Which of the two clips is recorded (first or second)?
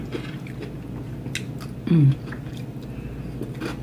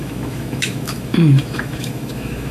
first